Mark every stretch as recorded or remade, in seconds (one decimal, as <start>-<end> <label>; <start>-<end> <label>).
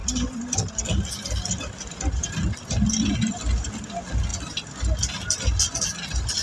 0.0-6.4 recorded